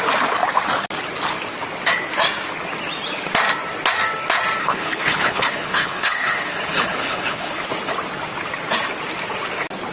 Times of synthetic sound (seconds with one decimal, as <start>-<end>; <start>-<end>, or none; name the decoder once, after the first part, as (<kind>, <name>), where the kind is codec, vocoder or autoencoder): 4.6-7.7 (codec, HILCodec)